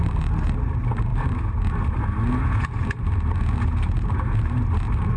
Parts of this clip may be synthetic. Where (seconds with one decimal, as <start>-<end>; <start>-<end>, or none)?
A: none